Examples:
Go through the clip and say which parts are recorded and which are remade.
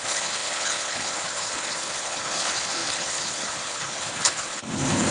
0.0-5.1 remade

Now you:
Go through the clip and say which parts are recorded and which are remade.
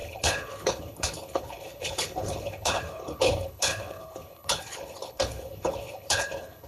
0.0-6.7 remade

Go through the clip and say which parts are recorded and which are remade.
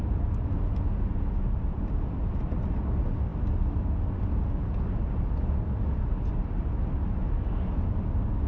0.0-8.5 recorded